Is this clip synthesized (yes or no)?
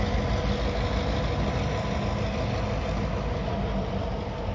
no